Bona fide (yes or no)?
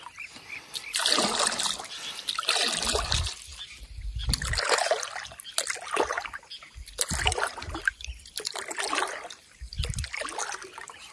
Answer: yes